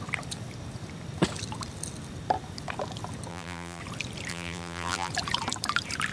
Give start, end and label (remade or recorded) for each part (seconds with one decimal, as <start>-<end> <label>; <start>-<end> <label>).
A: 0.0-3.3 recorded; 3.3-3.8 remade; 3.8-4.3 recorded; 4.3-5.1 remade; 5.1-6.1 recorded

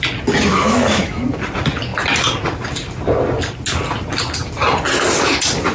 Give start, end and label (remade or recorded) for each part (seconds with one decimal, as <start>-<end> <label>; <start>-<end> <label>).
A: 0.0-0.5 recorded; 0.5-1.2 remade; 1.2-5.7 recorded

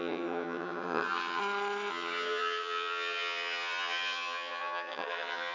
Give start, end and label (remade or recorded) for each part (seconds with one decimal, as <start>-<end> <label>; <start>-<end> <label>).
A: 0.0-1.4 remade; 1.4-1.9 recorded; 1.9-5.5 remade

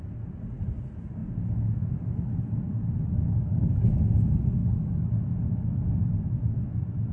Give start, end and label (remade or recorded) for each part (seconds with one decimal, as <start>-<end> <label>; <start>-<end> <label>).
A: 0.0-3.1 recorded; 3.1-3.9 remade; 3.9-4.6 recorded; 4.6-5.1 remade; 5.1-7.1 recorded

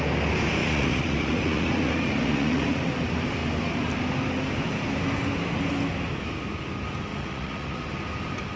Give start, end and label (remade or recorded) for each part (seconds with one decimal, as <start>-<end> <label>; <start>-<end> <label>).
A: 0.0-0.6 recorded; 0.6-2.8 remade; 2.8-7.1 recorded; 7.1-7.8 remade; 7.8-8.6 recorded

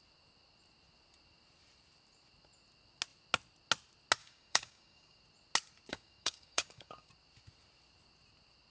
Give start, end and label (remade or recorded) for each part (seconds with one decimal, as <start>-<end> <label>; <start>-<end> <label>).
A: 0.0-4.2 recorded; 4.2-5.2 remade; 5.2-5.9 recorded; 5.9-7.1 remade; 7.1-8.7 recorded